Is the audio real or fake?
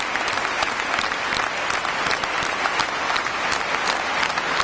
real